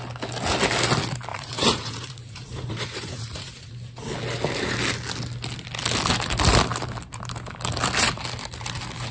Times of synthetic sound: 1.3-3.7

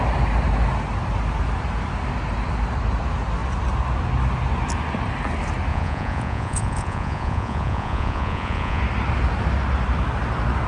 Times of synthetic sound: 5.7-8.8